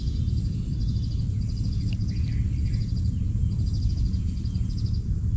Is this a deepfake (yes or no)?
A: no